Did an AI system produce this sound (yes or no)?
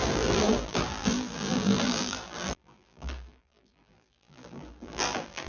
yes